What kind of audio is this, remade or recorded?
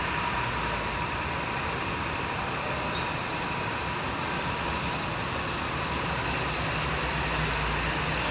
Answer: recorded